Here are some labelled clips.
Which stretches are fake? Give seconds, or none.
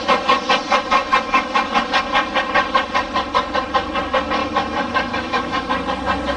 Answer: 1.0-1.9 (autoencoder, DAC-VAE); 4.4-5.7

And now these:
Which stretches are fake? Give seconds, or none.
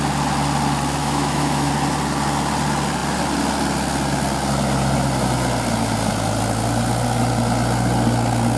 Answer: 1.0-1.7 (autoencoder, DAC-VAE)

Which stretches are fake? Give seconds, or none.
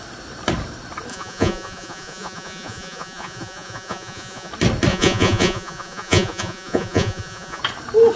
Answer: 1.1-4.5 (vocoder, Vocos); 4.9-7.6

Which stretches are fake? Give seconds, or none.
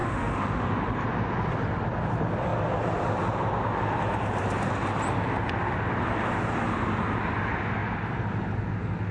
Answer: 0.0-0.7 (autoencoder, DAC-VAE)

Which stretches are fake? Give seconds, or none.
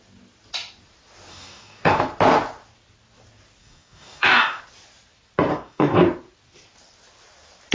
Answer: 1.3-2.0 (codec, DAC); 3.6-4.6; 5.5-6.0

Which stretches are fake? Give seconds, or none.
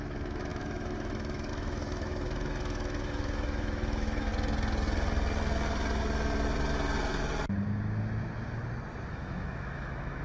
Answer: 0.0-4.3 (autoencoder, DAC-VAE); 9.1-10.2